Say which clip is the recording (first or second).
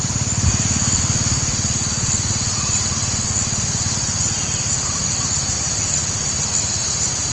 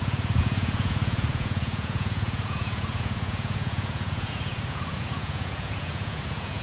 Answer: first